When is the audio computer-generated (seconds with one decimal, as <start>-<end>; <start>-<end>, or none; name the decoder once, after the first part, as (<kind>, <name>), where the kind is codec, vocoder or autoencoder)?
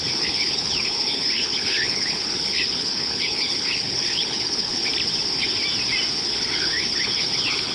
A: 0.0-4.9 (codec, HILCodec); 6.1-7.7